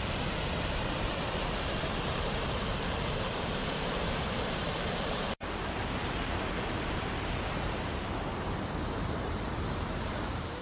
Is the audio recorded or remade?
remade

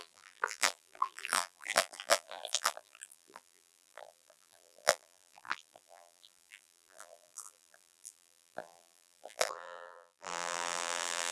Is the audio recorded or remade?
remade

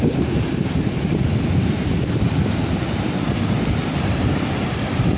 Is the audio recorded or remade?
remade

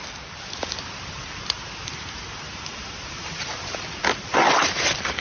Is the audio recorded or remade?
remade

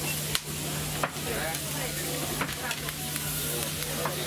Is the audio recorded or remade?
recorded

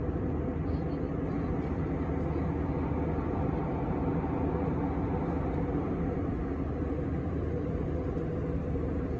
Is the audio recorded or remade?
recorded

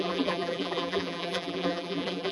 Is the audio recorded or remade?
remade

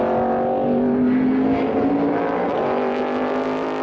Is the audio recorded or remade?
recorded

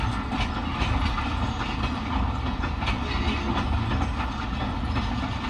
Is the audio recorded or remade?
recorded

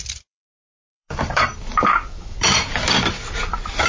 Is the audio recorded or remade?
remade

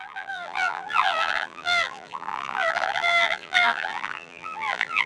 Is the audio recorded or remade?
remade